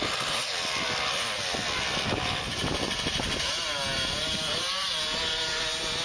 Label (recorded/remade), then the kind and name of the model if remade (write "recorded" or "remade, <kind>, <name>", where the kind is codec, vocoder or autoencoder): recorded